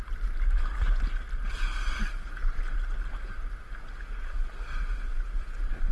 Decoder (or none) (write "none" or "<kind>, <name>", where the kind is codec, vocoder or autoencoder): none